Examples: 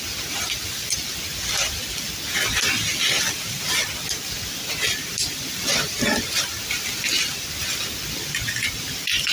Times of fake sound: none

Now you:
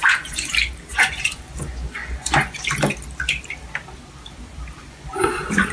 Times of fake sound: 0.0-0.5 (vocoder, Vocos); 0.9-2.6; 4.8-5.7

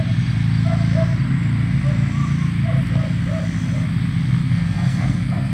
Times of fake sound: 4.4-5.5 (codec, SNAC)

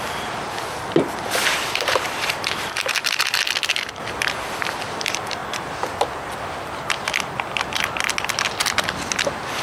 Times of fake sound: 1.5-2.4 (vocoder, BigVGAN v2)

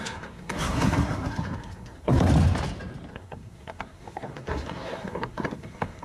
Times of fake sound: 0.0-2.3 (codec, SNAC); 3.1-6.0

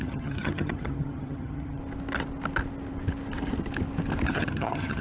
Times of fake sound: 0.0-1.8 (vocoder, HiFi-GAN); 4.3-5.0